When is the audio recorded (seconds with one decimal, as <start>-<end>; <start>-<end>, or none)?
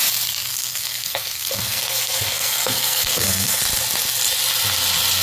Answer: 0.0-0.5; 3.6-5.2